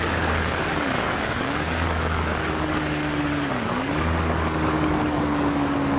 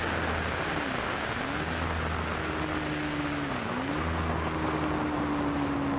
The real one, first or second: second